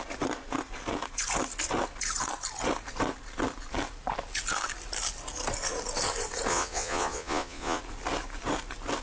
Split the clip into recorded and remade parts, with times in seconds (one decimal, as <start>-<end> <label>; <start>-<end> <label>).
0.0-6.5 recorded; 6.5-7.8 remade; 7.8-9.0 recorded